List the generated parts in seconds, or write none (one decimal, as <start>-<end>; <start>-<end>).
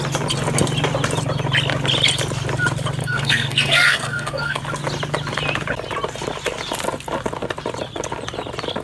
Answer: 3.0-4.6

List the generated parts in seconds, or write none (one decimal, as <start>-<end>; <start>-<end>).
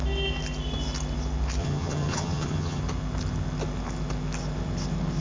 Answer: 1.6-2.8